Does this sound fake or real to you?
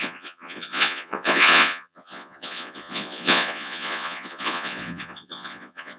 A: fake